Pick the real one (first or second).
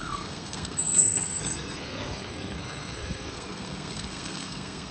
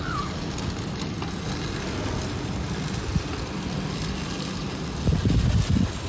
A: second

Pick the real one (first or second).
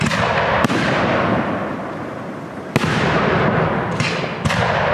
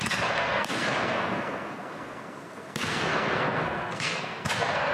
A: first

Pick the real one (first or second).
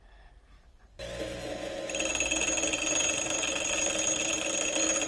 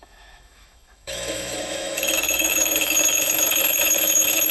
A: first